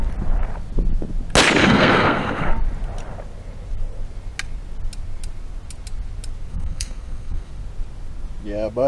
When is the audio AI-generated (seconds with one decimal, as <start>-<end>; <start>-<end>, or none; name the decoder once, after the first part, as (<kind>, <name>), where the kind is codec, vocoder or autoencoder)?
1.6-2.5 (codec, SNAC); 6.5-7.5

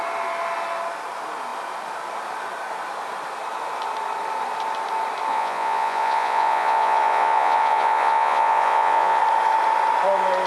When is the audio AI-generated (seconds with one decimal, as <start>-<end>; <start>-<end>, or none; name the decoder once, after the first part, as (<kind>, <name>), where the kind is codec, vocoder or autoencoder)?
5.3-9.2 (vocoder, Vocos)